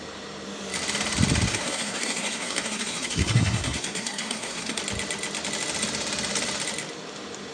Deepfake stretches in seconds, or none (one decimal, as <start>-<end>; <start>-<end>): 1.5-4.8